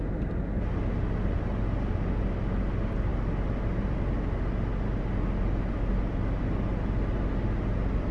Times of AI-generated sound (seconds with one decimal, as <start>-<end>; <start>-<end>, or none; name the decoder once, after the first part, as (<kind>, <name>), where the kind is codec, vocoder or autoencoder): none